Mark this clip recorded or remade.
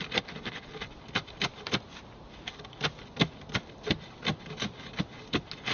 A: recorded